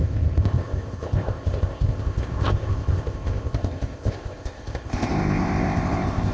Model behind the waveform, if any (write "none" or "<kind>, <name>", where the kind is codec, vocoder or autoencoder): codec, ZipCodec